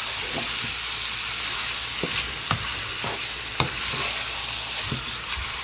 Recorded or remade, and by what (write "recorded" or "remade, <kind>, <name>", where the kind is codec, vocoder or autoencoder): recorded